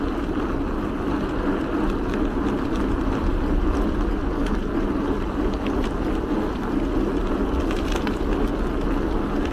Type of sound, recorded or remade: recorded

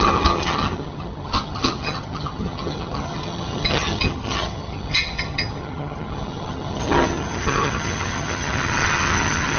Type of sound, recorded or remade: remade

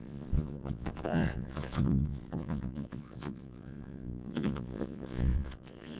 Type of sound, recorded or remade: remade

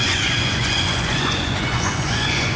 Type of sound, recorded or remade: remade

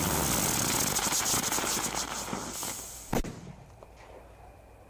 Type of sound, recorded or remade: recorded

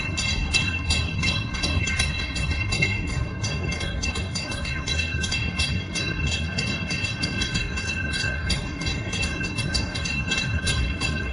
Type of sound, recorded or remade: remade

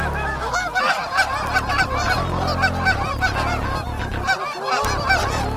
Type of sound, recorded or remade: recorded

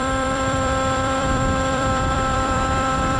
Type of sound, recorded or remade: remade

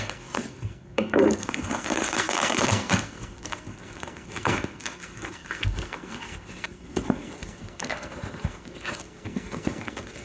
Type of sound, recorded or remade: remade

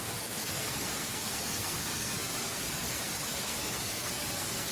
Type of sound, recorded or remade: remade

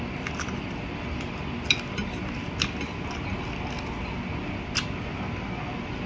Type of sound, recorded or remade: recorded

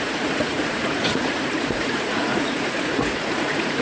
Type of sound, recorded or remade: remade